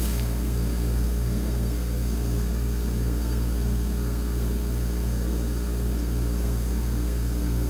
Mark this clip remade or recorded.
remade